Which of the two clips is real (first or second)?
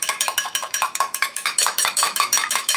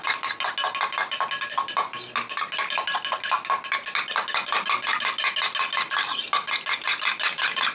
second